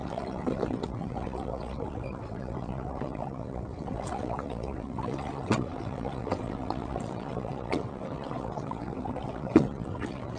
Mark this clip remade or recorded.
remade